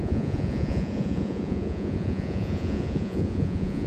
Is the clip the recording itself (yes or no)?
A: no